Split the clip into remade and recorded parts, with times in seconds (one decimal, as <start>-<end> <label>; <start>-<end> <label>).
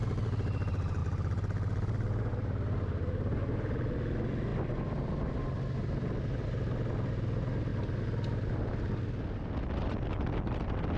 0.0-11.0 recorded